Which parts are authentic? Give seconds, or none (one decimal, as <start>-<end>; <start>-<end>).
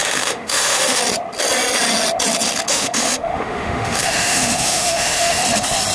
1.0-2.7; 5.4-5.9